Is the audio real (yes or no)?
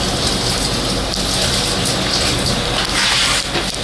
yes